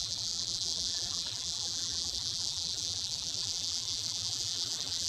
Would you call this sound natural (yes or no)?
no